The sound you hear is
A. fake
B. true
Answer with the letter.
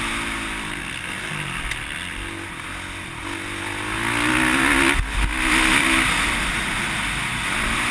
B